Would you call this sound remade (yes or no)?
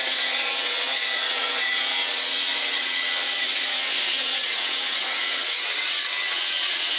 yes